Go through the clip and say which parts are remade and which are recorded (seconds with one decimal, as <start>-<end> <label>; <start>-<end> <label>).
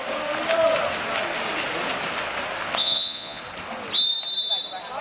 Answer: 0.0-2.8 recorded; 2.8-3.4 remade; 3.4-5.0 recorded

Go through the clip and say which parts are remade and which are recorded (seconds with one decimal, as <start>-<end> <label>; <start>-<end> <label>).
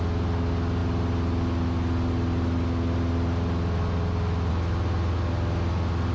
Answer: 0.0-6.1 recorded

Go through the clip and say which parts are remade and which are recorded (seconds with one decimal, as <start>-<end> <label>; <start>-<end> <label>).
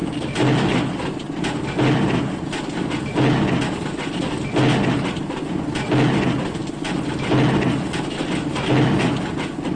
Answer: 0.0-9.8 recorded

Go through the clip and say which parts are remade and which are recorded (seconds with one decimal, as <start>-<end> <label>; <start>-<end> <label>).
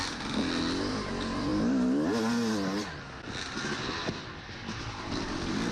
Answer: 0.0-5.7 recorded